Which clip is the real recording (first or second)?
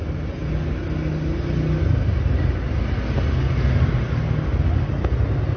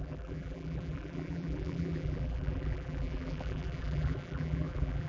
first